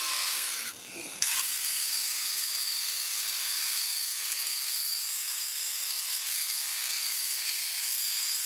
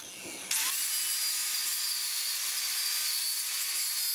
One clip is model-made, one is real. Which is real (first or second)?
second